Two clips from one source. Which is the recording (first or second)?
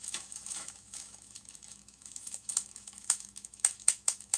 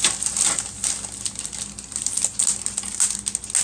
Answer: second